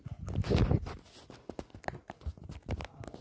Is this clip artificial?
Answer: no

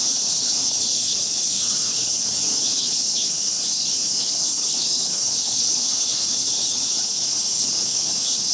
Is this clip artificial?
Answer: yes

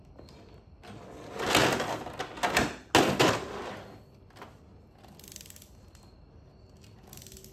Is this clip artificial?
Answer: no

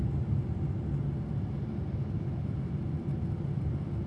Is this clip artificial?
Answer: no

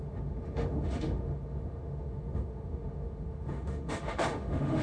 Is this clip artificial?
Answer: yes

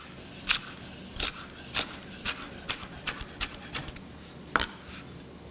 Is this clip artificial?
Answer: no